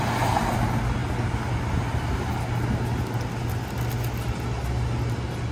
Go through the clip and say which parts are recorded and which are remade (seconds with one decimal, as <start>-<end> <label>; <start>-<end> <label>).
0.0-5.5 recorded